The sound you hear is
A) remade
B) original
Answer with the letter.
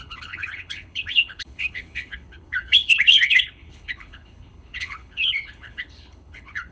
A